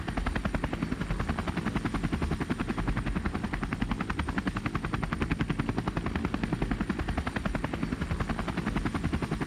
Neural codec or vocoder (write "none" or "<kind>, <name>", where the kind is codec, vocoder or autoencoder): none